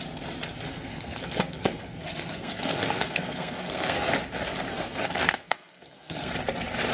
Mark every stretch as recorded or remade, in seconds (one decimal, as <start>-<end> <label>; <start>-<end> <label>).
0.0-0.7 recorded; 0.7-4.1 remade; 4.1-4.7 recorded; 4.7-6.3 remade; 6.3-6.9 recorded